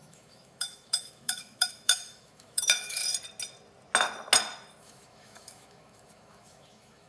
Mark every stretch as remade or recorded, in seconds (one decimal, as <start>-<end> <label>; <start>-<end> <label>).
0.0-3.0 remade; 3.0-4.8 recorded; 4.8-7.1 remade